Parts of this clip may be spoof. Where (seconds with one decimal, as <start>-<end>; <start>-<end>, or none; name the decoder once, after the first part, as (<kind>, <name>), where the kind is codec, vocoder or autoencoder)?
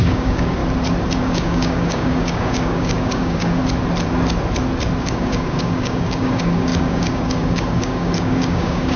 0.0-0.6 (codec, DAC); 1.2-3.6; 5.0-9.0